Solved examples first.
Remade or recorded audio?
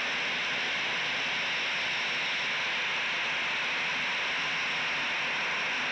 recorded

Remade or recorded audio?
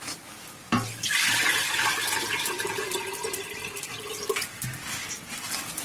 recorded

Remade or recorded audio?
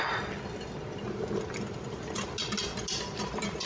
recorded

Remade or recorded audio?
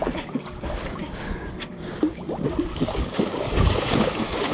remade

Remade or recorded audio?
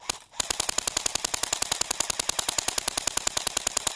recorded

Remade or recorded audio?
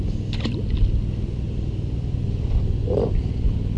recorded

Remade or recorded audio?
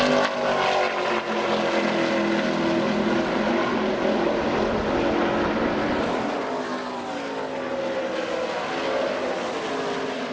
recorded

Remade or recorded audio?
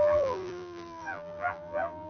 remade